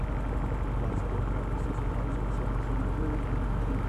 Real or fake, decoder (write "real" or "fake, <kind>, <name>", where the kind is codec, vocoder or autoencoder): real